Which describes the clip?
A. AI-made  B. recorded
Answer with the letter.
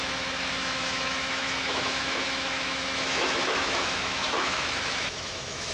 A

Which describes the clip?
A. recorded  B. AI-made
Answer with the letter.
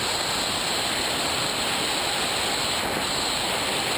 A